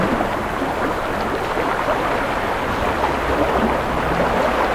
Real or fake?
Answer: real